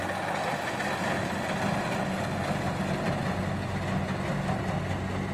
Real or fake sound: real